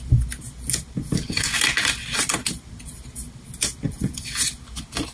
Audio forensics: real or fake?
real